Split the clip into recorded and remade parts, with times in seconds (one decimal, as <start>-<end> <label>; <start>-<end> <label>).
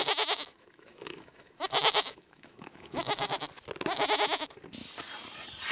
0.0-3.3 remade; 3.3-5.7 recorded